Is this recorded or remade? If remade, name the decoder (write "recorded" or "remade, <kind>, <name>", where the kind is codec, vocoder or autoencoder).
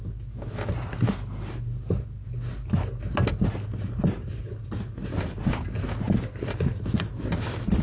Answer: recorded